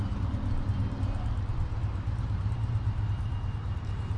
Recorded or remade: remade